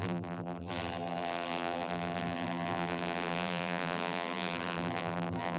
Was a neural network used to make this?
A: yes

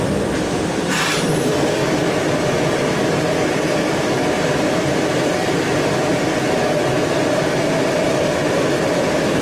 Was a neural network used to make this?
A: yes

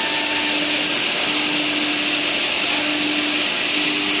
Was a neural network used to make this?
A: no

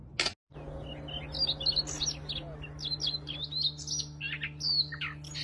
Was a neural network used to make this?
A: no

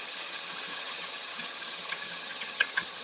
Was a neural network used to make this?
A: yes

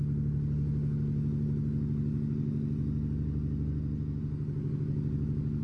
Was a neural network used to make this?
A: no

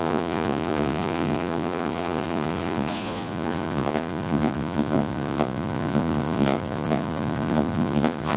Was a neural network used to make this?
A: yes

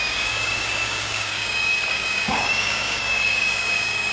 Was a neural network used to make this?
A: yes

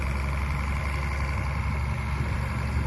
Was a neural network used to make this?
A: no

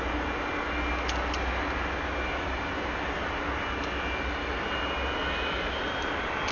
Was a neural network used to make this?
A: no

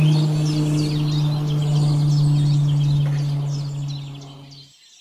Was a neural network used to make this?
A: no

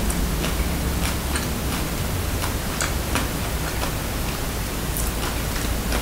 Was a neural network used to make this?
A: no